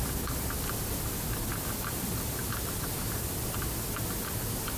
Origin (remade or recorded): recorded